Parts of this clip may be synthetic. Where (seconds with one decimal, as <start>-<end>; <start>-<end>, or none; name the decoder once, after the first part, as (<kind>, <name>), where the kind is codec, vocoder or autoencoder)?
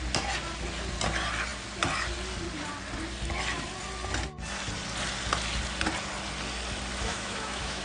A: 7.1-7.8 (autoencoder, DAC-VAE)